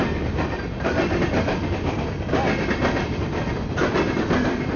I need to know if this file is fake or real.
real